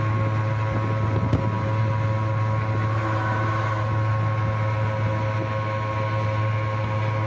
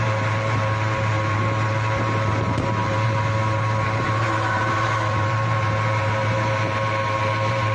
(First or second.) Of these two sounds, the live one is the first